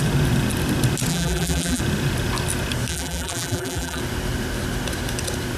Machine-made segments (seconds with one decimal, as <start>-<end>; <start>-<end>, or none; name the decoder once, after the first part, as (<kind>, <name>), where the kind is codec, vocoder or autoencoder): 1.1-1.8 (vocoder, BigVGAN v2); 2.9-4.0